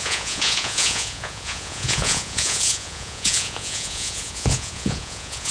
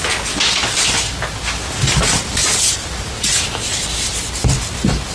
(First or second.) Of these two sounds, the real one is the second